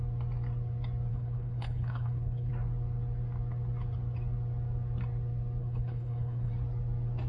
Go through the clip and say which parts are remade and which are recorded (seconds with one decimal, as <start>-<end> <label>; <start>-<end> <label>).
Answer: 0.0-1.1 recorded; 1.1-2.5 remade; 2.5-5.6 recorded; 5.6-6.5 remade; 6.5-7.3 recorded